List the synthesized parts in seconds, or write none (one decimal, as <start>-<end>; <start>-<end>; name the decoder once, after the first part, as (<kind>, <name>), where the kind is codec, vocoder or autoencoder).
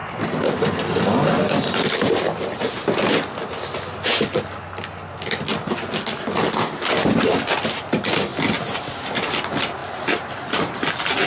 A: 8.3-8.8 (vocoder, BigVGAN v2); 9.8-10.9